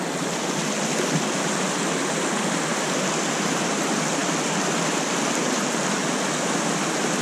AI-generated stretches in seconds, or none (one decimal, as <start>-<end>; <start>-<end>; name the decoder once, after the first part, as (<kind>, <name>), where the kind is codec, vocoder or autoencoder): none